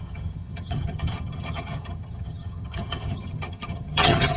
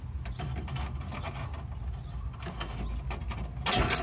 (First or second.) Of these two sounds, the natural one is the second